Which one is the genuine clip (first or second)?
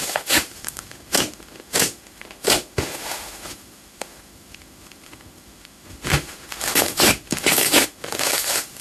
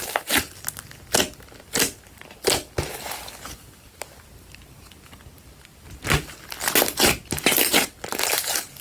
second